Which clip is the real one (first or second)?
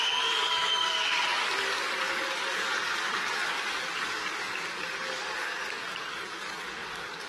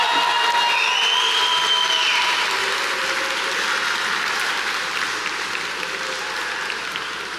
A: second